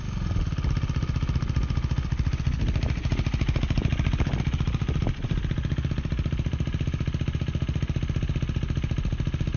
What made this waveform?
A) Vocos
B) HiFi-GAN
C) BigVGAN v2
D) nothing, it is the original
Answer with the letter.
D